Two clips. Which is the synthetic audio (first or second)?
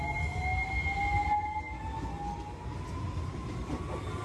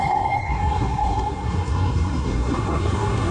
second